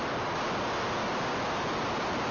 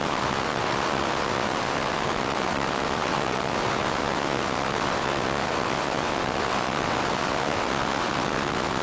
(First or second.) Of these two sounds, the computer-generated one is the second